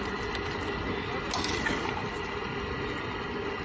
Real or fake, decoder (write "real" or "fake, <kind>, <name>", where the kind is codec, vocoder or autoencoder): real